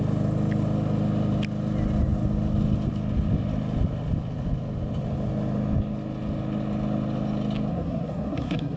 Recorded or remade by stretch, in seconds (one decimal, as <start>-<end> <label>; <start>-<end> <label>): 0.0-7.7 recorded; 7.7-8.8 remade

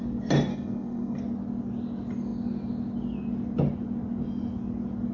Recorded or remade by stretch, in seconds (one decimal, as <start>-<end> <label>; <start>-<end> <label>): 0.0-0.5 recorded; 0.5-1.2 remade; 1.2-5.1 recorded

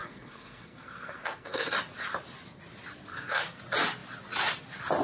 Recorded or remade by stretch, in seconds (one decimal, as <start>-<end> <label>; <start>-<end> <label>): 0.0-1.7 remade; 1.7-3.1 recorded; 3.1-3.6 remade; 3.6-5.0 recorded

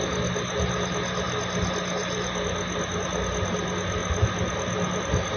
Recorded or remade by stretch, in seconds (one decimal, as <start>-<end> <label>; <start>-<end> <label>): 0.0-5.4 recorded

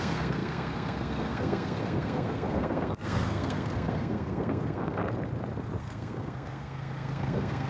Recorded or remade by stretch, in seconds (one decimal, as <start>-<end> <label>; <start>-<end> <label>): 0.0-5.0 remade; 5.0-5.8 recorded; 5.8-7.7 remade

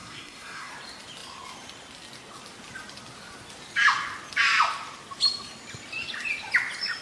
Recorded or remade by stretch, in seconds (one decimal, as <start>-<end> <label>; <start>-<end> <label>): 0.0-0.7 remade; 0.7-7.0 recorded

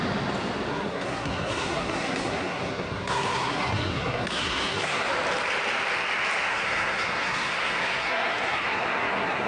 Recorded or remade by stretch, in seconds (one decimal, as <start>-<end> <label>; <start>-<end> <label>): 0.0-0.7 recorded; 0.7-5.1 remade; 5.1-6.5 recorded; 6.5-9.5 remade